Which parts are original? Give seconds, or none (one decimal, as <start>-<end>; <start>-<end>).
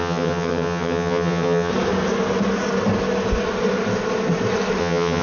1.7-4.8